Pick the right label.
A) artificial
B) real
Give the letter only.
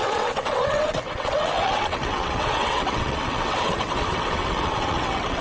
A